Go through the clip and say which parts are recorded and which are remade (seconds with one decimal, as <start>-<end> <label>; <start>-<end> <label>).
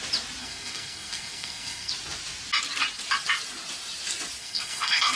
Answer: 0.0-0.4 recorded; 0.4-1.9 remade; 1.9-4.4 recorded; 4.4-5.2 remade